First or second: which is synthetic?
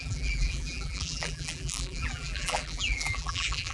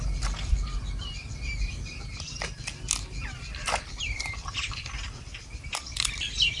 first